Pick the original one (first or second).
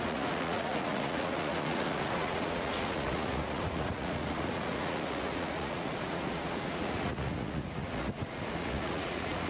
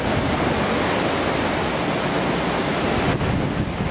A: second